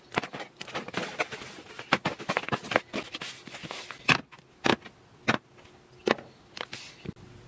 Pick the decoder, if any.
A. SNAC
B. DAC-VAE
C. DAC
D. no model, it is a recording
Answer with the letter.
D